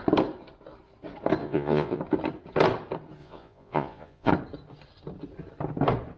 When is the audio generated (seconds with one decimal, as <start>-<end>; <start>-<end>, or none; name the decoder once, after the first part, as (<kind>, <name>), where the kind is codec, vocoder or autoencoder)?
1.4-2.0 (vocoder, Vocos); 3.2-4.3